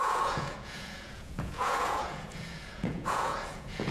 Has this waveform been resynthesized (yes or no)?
yes